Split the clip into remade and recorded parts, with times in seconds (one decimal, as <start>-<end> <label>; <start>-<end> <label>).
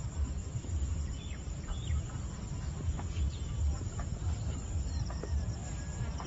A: 0.0-0.4 recorded; 0.4-4.2 remade; 4.2-5.6 recorded; 5.6-6.3 remade